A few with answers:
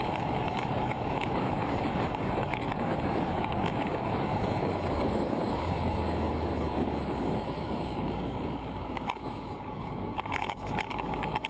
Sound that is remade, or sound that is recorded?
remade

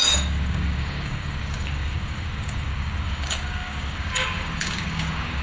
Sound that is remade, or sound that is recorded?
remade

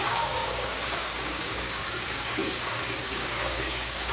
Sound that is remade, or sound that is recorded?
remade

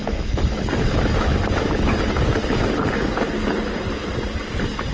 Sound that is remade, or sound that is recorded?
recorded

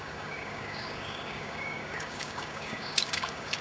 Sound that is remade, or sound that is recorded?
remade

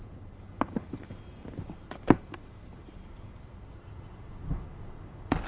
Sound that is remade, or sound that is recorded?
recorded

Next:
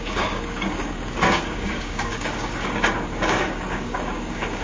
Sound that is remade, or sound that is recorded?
remade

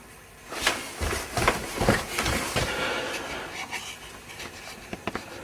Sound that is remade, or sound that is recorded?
recorded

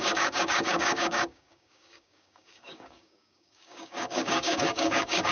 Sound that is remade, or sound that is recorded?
remade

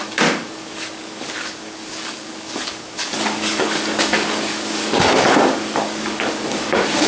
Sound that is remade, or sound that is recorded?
remade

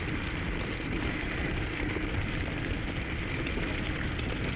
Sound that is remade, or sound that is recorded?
recorded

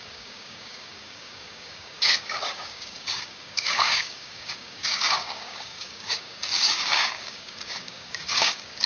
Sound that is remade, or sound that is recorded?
remade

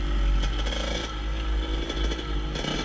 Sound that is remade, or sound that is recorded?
recorded